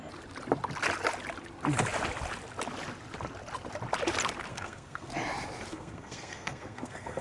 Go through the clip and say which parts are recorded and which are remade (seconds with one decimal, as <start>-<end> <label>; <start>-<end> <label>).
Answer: 0.0-4.5 recorded; 4.5-5.1 remade; 5.1-5.7 recorded; 5.7-7.2 remade